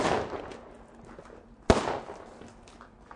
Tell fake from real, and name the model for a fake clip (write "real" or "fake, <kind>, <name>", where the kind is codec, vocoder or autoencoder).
real